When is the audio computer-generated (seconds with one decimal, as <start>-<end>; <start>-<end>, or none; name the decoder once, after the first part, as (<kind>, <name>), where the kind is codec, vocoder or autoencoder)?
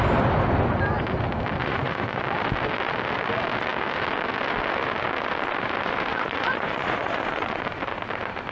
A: 1.6-2.2 (vocoder, Vocos); 6.1-7.6